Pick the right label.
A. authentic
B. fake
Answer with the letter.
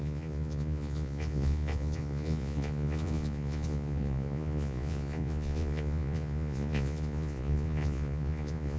B